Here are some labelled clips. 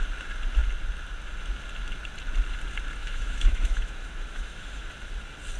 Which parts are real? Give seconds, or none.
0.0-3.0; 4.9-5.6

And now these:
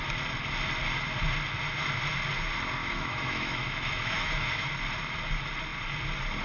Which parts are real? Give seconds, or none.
0.0-2.8; 4.7-6.4

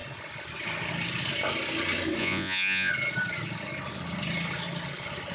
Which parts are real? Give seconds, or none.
0.0-2.2; 2.9-5.3

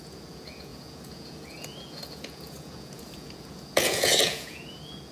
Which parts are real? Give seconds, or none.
none

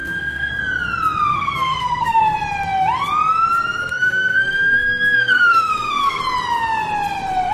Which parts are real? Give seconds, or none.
0.5-1.3; 2.2-3.8; 6.2-7.5